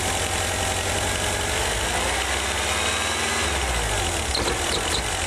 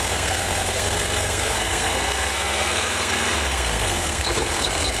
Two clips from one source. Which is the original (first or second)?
first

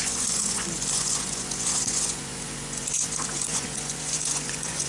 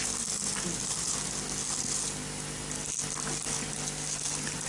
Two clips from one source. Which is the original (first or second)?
second